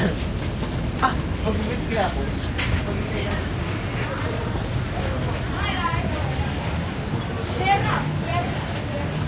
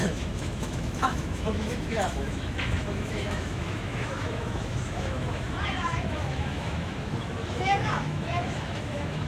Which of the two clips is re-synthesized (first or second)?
second